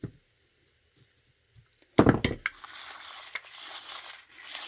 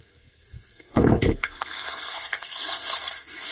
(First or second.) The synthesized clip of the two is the second